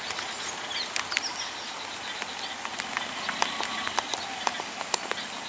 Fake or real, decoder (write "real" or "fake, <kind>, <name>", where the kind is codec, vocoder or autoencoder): real